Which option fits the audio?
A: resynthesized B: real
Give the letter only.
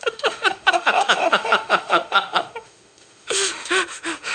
A